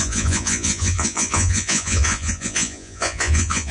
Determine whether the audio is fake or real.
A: fake